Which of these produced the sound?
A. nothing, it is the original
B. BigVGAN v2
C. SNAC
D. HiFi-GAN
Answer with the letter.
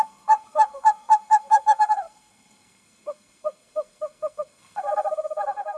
C